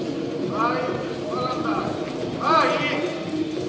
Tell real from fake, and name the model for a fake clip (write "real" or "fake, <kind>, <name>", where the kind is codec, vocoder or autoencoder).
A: real